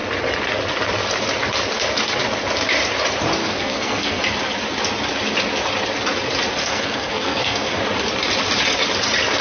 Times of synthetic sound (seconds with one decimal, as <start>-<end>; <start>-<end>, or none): 3.4-4.2; 6.6-7.8